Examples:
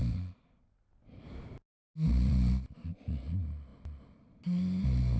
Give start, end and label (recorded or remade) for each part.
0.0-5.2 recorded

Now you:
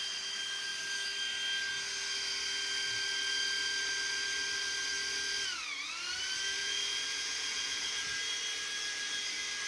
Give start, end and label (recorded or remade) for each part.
0.0-6.6 recorded; 6.6-8.2 remade; 8.2-9.7 recorded